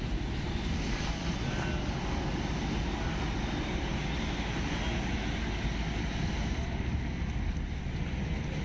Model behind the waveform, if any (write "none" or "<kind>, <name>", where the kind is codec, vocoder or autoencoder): none